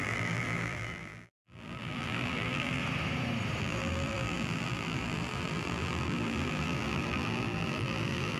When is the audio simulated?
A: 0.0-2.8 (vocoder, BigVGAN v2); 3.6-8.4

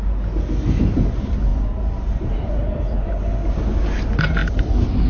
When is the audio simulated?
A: 1.5-2.4 (vocoder, BigVGAN v2)

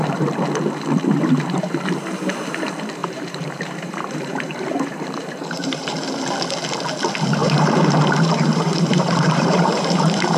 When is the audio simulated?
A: 3.0-6.2 (vocoder, BigVGAN v2); 7.4-10.4

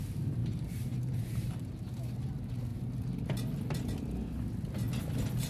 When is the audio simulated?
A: 0.4-1.7 (vocoder, BigVGAN v2)

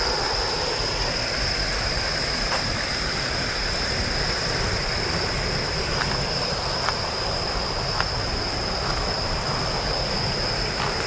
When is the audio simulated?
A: none

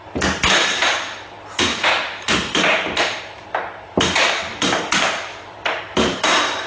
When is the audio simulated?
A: 1.7-3.2 (vocoder, BigVGAN v2); 5.3-6.7

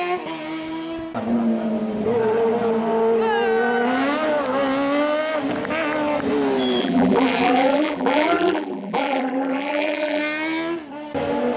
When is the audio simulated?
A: 6.8-10.2 (vocoder, BigVGAN v2)